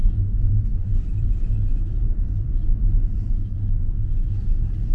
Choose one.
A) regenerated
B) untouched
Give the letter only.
A